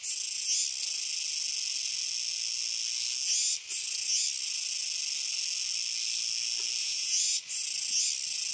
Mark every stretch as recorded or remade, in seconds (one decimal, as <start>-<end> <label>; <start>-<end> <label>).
0.0-6.8 recorded; 6.8-7.4 remade; 7.4-8.5 recorded

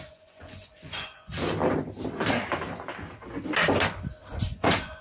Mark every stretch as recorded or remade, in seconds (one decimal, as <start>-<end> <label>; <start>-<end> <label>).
0.0-1.3 remade; 1.3-4.3 recorded; 4.3-5.0 remade

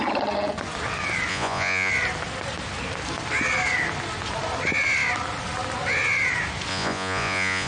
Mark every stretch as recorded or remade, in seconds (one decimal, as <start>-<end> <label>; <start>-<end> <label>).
0.0-1.3 recorded; 1.3-1.9 remade; 1.9-6.7 recorded; 6.7-7.7 remade

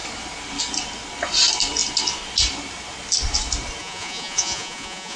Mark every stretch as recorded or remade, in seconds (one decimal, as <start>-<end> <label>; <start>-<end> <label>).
0.0-3.8 recorded; 3.8-5.2 remade

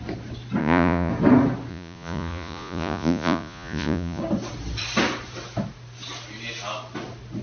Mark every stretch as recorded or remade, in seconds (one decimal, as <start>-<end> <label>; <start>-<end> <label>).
0.0-0.6 recorded; 0.6-1.1 remade; 1.1-1.7 recorded; 1.7-4.2 remade; 4.2-7.4 recorded

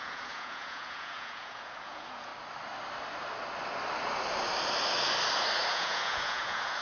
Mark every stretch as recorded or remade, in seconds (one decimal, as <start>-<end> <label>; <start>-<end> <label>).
0.0-2.3 remade; 2.3-5.7 recorded; 5.7-6.8 remade

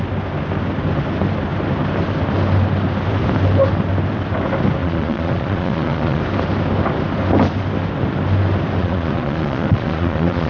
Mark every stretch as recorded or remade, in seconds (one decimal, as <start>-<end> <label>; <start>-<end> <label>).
0.0-4.8 recorded; 4.8-6.2 remade; 6.2-8.8 recorded; 8.8-10.5 remade